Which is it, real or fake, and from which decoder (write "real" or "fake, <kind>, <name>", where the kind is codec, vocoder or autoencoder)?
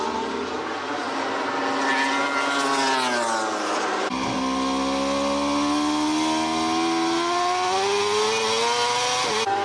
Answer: real